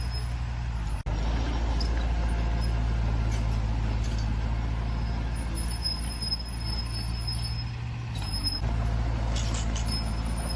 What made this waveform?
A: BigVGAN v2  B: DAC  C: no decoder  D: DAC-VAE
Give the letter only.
C